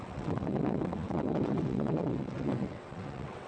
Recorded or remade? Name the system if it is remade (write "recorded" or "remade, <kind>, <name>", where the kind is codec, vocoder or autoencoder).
remade, vocoder, WaveNeXt